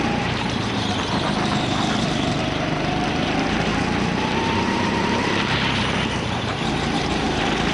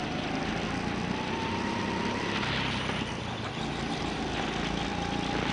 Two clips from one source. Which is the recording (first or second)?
second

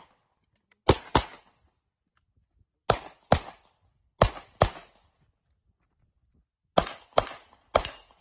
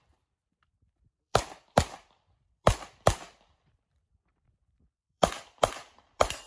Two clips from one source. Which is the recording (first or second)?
first